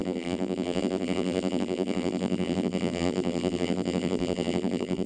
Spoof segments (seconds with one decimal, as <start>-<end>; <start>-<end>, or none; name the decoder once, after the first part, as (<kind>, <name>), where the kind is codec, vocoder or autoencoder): 0.0-5.1 (vocoder, BigVGAN v2)